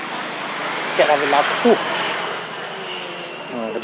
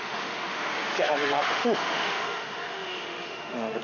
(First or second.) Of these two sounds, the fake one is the second